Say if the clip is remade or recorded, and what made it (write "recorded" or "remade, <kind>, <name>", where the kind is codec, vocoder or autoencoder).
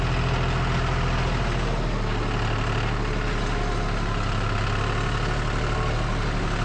recorded